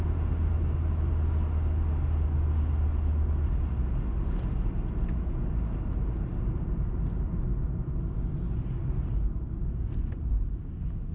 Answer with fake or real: real